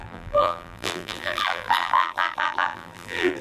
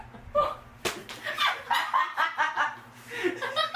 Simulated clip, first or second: first